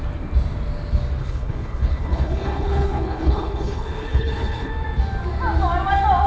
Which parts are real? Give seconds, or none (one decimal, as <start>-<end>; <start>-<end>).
0.0-1.2; 4.7-6.3